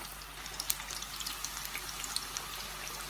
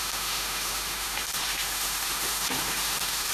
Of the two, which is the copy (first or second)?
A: second